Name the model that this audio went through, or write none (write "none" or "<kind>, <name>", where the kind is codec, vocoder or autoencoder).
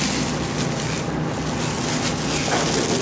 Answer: none